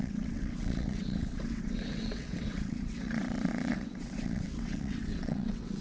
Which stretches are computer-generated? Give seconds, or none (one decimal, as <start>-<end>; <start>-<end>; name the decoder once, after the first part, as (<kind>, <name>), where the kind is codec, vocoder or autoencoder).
0.0-5.8 (vocoder, WaveNeXt)

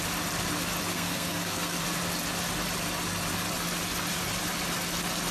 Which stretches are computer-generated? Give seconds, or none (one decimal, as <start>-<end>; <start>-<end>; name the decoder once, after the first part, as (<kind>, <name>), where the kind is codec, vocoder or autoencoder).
0.9-1.8 (codec, SNAC)

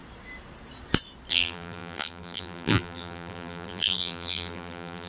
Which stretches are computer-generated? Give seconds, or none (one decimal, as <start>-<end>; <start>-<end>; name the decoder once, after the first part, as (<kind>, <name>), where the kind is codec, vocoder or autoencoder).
1.3-5.1 (vocoder, BigVGAN v2)